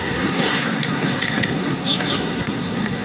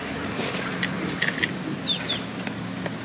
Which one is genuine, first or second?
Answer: second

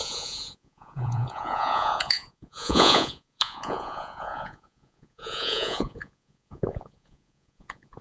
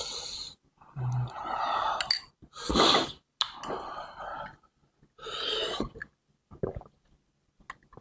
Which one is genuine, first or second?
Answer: second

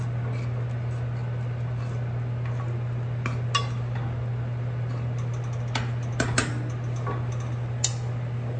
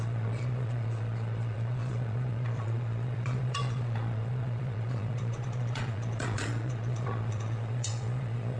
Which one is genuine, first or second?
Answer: first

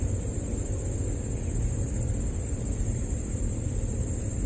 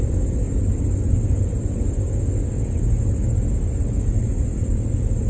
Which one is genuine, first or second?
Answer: second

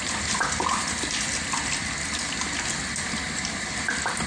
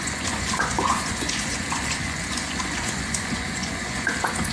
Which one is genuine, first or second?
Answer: first